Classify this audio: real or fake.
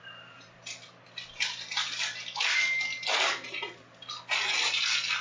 fake